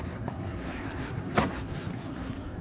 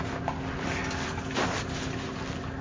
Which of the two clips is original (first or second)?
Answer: second